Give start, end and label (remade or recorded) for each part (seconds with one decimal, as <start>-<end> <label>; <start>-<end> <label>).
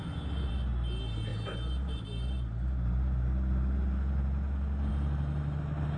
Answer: 0.0-6.0 recorded